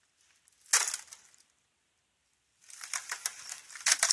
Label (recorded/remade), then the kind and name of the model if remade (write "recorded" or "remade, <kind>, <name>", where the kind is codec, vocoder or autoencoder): recorded